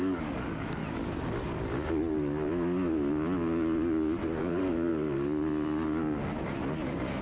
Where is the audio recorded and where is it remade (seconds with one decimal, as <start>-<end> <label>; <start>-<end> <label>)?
0.0-0.8 remade; 0.8-4.4 recorded; 4.4-4.9 remade; 4.9-7.2 recorded

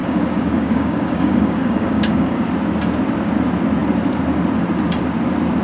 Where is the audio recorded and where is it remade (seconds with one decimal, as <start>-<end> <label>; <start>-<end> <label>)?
0.0-2.5 remade; 2.5-5.6 recorded